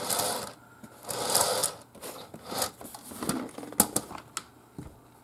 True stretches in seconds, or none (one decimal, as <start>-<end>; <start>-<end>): 0.0-5.2